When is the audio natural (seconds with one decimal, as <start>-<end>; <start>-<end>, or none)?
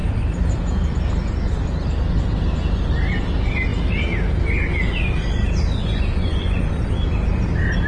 0.0-5.8; 6.6-7.9